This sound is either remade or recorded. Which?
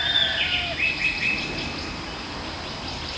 recorded